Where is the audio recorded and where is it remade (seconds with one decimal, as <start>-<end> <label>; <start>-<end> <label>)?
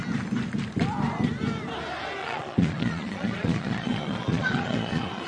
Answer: 0.0-2.2 recorded; 2.2-5.3 remade